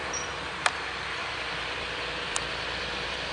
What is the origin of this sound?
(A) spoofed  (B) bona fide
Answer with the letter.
A